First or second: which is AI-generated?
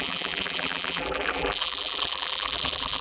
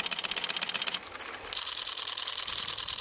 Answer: first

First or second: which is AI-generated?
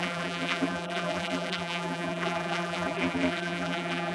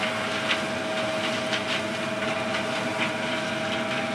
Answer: first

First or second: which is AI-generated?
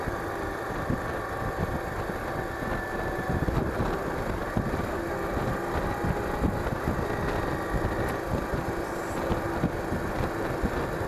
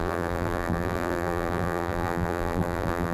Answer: second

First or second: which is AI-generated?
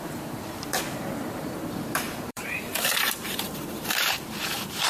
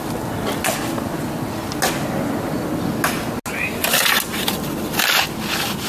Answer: first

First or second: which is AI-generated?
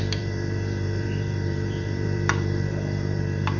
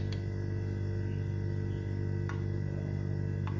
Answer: first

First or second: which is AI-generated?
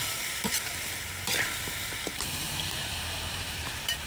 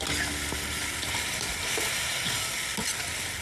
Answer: first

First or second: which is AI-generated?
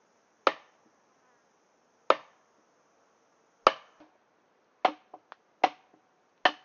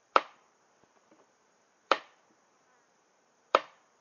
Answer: second